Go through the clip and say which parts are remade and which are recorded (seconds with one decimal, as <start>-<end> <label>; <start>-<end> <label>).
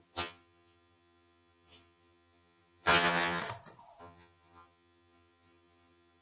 0.0-3.4 remade; 3.4-4.0 recorded; 4.0-6.2 remade